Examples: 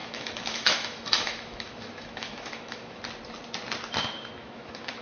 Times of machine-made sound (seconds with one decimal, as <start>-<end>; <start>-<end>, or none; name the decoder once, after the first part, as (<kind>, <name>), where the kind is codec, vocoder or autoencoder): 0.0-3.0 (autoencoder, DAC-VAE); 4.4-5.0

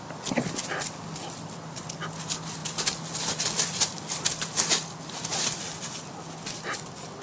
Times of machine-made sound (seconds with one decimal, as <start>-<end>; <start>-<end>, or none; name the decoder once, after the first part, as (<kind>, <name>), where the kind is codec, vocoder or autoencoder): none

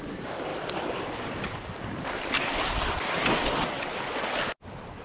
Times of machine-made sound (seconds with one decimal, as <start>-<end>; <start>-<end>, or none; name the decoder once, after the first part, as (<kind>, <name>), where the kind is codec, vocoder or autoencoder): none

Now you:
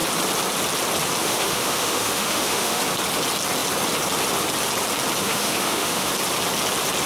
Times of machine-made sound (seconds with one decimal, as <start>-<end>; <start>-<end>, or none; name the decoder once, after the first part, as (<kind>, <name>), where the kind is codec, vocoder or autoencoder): 1.2-2.8 (autoencoder, DAC-VAE); 5.2-6.1

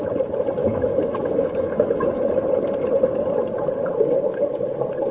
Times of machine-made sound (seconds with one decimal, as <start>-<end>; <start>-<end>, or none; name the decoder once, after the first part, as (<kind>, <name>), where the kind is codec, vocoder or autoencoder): 0.6-2.3 (autoencoder, DAC-VAE)

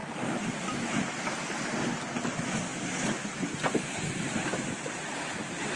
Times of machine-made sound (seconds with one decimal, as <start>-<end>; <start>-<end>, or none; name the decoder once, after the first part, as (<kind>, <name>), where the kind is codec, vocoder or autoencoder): none

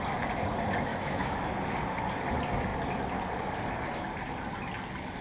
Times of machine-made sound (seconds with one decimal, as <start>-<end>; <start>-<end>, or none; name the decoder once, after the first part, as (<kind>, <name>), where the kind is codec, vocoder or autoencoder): 0.9-1.5 (autoencoder, DAC-VAE)

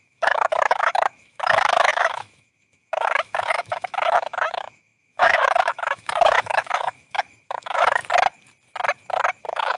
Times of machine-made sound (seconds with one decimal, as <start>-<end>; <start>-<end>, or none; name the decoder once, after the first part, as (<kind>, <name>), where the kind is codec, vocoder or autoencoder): 0.0-8.0 (autoencoder, DAC-VAE); 9.4-9.8